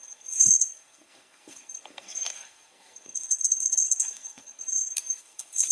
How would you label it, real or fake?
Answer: fake